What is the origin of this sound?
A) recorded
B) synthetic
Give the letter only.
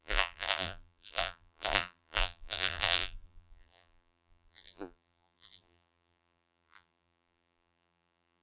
B